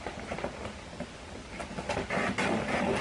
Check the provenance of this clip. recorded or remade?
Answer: remade